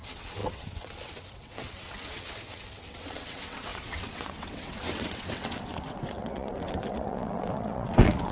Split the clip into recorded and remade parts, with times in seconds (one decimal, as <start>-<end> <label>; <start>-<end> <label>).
0.0-8.3 remade